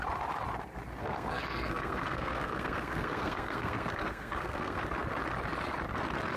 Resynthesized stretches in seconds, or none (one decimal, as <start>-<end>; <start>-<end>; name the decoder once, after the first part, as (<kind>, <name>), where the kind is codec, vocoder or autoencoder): 1.0-4.8 (codec, SNAC)